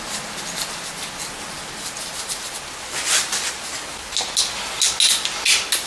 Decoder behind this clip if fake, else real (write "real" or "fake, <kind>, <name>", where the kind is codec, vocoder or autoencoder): real